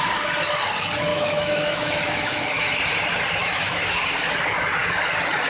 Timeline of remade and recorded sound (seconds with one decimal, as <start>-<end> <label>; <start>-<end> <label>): 0.0-1.1 recorded; 1.1-2.7 remade; 2.7-3.4 recorded; 3.4-4.0 remade; 4.0-5.5 recorded